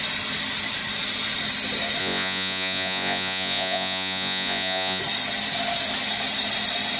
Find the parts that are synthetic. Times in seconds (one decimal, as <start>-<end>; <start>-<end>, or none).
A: 2.0-5.0